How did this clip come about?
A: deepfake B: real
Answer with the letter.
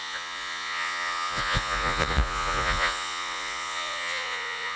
A